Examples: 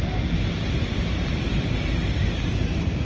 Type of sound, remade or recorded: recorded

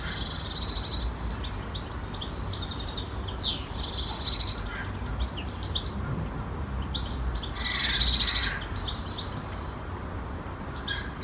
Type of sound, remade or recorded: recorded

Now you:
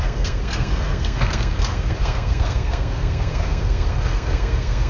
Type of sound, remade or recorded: remade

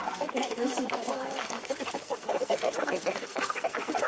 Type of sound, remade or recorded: remade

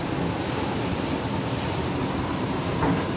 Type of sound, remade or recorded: recorded